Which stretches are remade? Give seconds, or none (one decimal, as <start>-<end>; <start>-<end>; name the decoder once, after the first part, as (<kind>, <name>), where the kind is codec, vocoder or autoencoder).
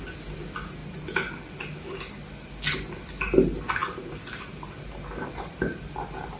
none